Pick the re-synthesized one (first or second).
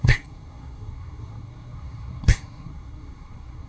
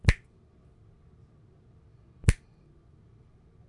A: first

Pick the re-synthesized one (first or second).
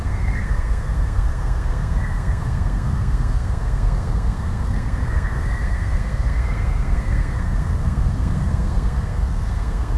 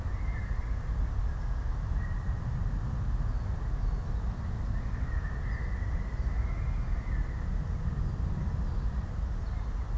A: first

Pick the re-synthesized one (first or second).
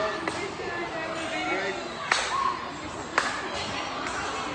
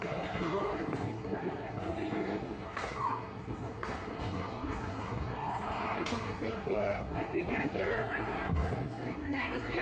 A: second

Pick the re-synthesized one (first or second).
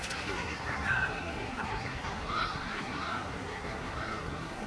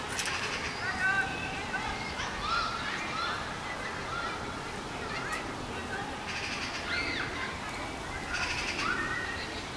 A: first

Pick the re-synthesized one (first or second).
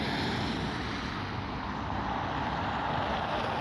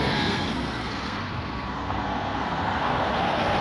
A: second